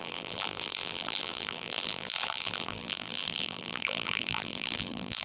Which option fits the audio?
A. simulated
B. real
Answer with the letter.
A